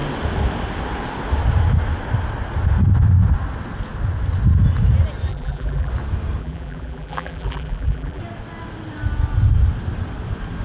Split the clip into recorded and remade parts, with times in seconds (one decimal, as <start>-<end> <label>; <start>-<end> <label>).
0.0-5.3 recorded; 5.3-5.9 remade; 5.9-6.4 recorded; 6.4-8.2 remade; 8.2-10.6 recorded